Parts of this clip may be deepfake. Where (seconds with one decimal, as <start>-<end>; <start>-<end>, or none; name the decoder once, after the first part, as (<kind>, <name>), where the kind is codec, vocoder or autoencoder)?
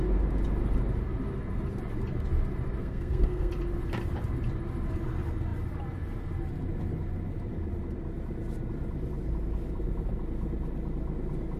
2.8-3.5 (codec, SNAC)